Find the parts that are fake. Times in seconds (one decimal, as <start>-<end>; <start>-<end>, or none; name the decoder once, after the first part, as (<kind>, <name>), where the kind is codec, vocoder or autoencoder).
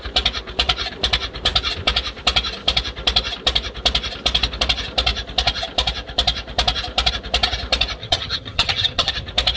8.0-9.1 (vocoder, HiFi-GAN)